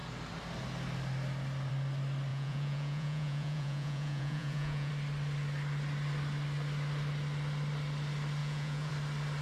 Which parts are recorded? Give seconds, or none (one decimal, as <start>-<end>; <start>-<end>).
0.0-2.3; 4.9-8.4; 8.9-9.4